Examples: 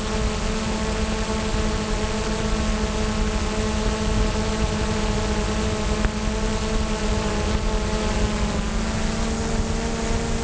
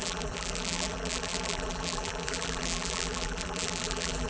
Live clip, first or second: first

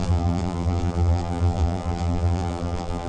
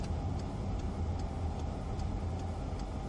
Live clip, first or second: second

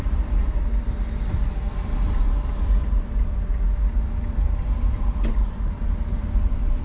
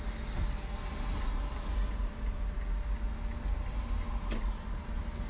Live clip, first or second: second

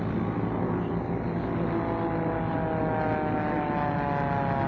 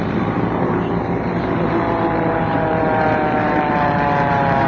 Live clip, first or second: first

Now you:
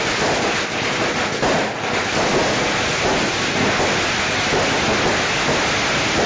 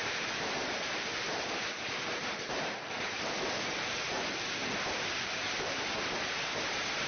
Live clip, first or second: first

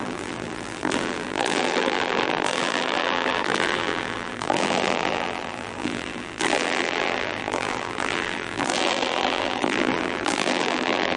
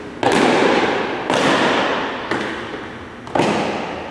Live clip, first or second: second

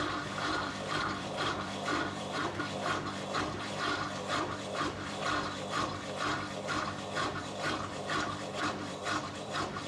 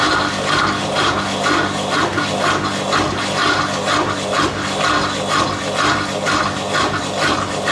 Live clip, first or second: second